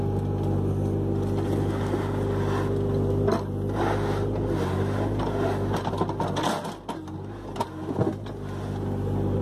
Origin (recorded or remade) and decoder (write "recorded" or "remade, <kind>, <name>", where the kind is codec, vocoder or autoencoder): recorded